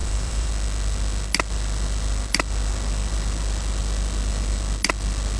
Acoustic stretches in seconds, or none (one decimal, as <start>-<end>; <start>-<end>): 0.5-5.4